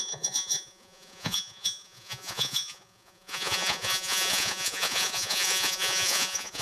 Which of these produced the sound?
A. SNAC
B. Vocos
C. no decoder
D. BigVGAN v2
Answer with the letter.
B